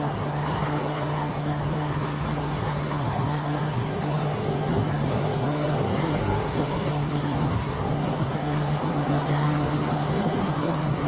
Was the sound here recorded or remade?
remade